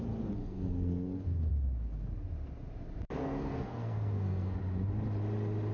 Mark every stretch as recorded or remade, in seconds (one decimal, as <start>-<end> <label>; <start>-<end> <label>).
0.0-0.4 recorded; 0.4-1.5 remade; 1.5-3.2 recorded; 3.2-4.6 remade; 4.6-5.7 recorded